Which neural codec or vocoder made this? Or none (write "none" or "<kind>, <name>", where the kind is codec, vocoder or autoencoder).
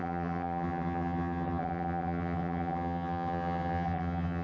vocoder, HiFi-GAN